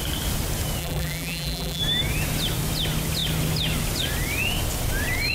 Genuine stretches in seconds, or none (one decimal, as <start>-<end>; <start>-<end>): 0.0-0.8; 1.8-5.3